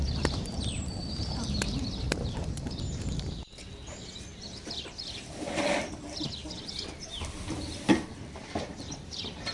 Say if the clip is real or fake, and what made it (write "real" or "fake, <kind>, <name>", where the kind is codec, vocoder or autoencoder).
fake, vocoder, BigVGAN v2